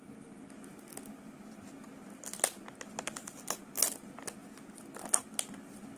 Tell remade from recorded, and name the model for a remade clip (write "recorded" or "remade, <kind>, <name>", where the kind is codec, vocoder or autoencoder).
recorded